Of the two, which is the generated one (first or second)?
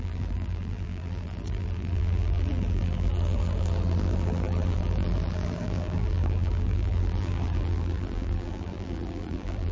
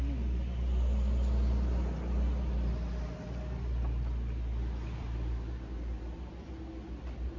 first